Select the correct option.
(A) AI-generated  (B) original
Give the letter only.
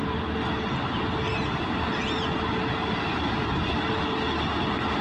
B